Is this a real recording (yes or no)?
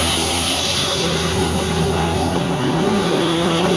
no